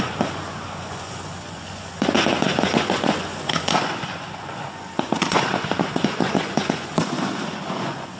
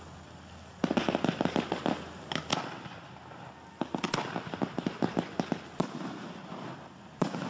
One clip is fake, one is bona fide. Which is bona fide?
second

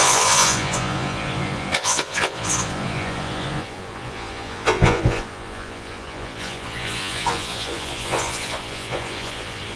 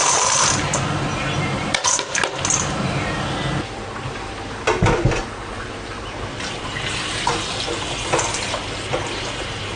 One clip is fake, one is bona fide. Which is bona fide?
second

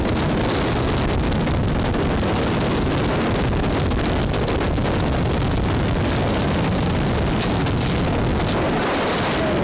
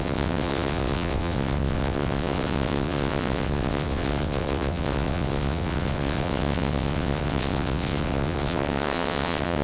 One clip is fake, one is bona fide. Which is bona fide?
first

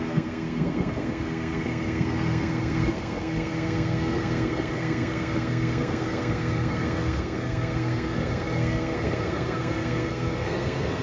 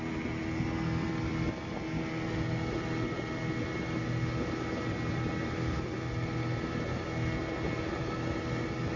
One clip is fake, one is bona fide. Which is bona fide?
second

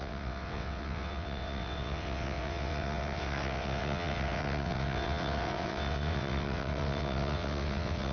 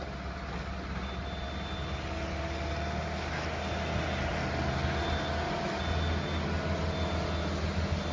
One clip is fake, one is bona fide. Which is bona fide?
second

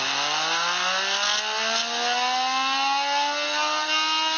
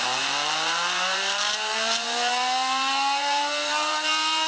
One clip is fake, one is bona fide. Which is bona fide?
first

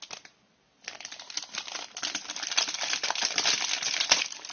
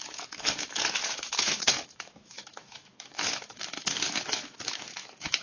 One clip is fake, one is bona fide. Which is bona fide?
first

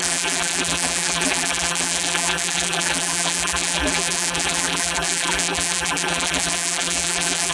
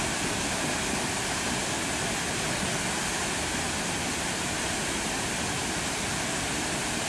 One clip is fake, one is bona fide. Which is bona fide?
second